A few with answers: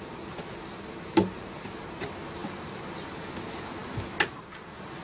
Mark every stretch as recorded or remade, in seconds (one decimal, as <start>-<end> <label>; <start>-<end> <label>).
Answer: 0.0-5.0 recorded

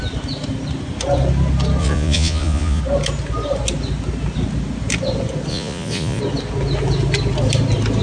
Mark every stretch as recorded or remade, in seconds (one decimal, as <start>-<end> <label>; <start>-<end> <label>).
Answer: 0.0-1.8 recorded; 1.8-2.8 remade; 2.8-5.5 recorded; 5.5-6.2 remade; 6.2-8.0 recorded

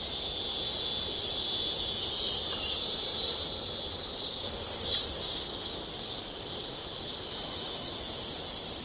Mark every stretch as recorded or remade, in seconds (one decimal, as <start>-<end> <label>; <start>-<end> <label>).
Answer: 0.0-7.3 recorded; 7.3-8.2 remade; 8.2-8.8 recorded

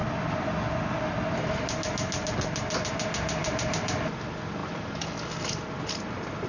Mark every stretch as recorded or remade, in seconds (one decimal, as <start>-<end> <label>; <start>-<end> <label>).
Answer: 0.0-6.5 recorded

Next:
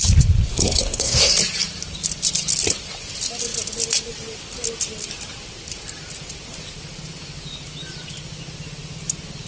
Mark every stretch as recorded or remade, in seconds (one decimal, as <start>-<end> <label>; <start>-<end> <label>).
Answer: 0.0-0.5 recorded; 0.5-1.3 remade; 1.3-9.5 recorded

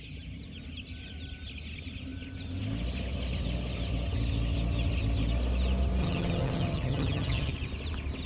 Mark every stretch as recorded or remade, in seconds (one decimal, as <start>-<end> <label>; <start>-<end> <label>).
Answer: 0.0-6.0 recorded; 6.0-7.5 remade; 7.5-8.3 recorded

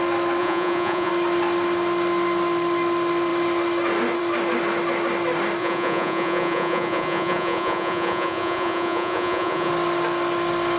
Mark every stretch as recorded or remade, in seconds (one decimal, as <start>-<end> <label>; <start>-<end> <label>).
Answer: 0.0-0.4 recorded; 0.4-1.1 remade; 1.1-5.6 recorded; 5.6-9.7 remade; 9.7-10.8 recorded